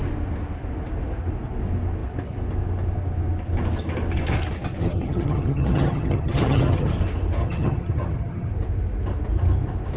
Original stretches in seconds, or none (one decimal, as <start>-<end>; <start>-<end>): 0.0-4.8; 6.9-7.4; 8.5-10.0